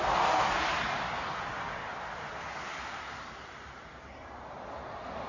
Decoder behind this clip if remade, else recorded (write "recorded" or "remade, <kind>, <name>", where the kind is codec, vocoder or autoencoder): recorded